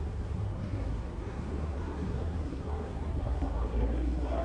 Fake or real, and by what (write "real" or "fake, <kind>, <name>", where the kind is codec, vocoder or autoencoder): fake, codec, SNAC